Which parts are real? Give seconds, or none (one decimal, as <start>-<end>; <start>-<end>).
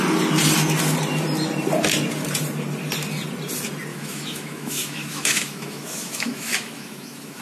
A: 0.0-3.9